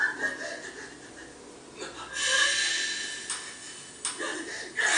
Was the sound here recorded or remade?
recorded